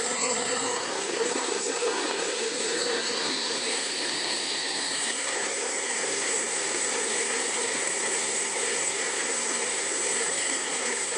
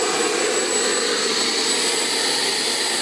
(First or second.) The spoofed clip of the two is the first